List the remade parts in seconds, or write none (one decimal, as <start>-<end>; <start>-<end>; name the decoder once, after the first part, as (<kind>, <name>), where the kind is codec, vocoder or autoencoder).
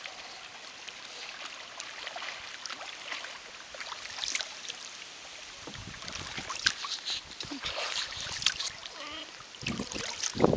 0.0-5.8 (vocoder, BigVGAN v2); 7.5-10.6